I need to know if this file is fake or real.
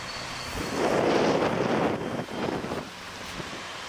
real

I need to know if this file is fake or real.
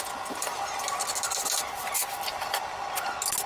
real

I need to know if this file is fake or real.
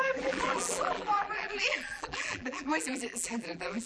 fake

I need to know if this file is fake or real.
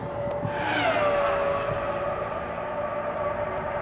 real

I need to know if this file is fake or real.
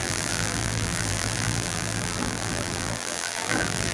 fake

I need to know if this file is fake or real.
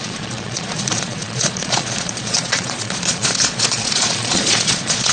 fake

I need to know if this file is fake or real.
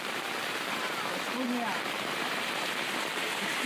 fake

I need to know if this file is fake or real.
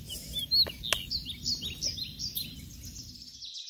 real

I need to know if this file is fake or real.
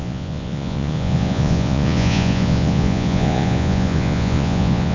fake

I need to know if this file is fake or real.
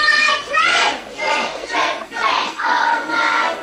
fake